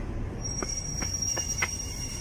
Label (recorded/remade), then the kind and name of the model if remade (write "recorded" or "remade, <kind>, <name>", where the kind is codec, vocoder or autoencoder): remade, vocoder, BigVGAN v2